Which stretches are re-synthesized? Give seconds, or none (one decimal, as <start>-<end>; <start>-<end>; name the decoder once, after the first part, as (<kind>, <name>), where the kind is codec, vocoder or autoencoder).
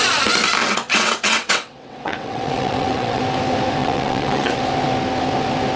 0.6-3.2 (vocoder, WaveNeXt); 3.8-4.6